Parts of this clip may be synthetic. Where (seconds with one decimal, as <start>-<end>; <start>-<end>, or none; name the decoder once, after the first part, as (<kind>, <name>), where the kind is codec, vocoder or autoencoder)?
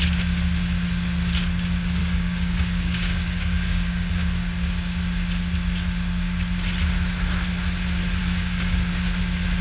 2.0-4.1 (codec, DAC); 8.2-8.9